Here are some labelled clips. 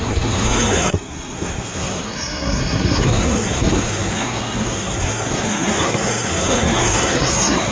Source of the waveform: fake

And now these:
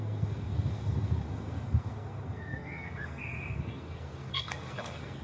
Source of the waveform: fake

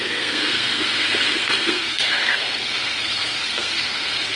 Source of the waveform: fake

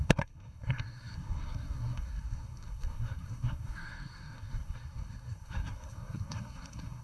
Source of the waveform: fake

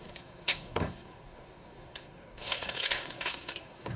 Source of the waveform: fake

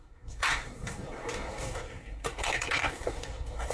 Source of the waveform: fake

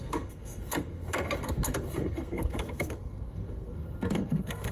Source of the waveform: fake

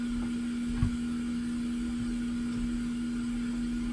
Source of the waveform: real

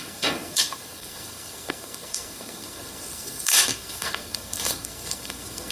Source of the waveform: fake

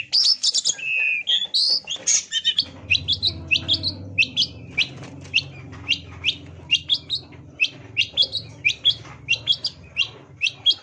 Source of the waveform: real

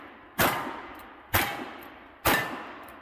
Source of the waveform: real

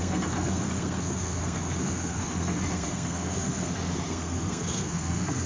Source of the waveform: fake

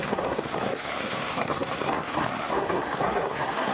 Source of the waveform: fake